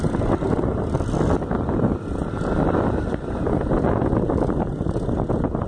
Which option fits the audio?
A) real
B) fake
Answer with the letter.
A